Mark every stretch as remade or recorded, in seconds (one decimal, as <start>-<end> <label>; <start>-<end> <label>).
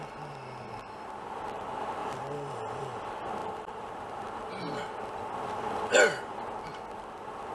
0.0-2.0 recorded; 2.0-2.8 remade; 2.8-3.4 recorded; 3.4-3.9 remade; 3.9-7.5 recorded